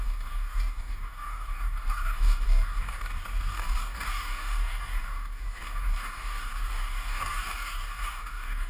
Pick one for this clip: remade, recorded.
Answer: remade